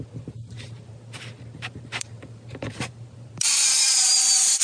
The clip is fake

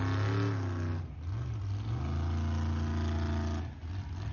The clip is real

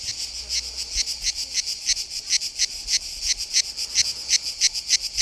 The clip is real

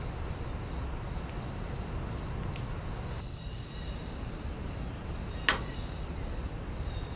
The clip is real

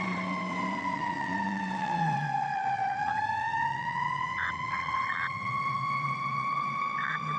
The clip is fake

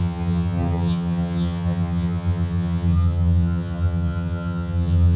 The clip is fake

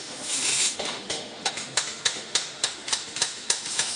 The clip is fake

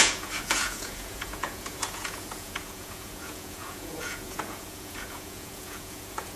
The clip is fake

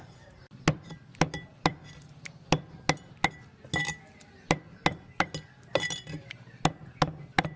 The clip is real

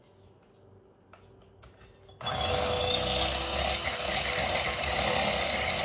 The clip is real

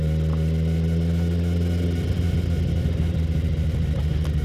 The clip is real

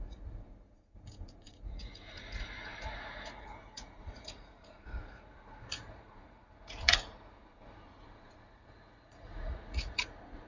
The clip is fake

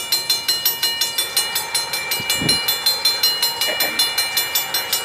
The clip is real